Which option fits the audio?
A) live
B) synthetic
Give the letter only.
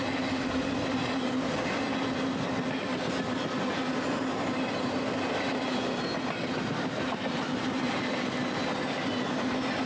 A